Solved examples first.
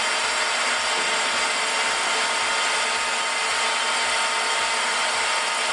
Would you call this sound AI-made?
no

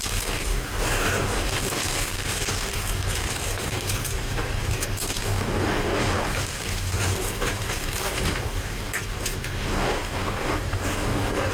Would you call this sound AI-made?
yes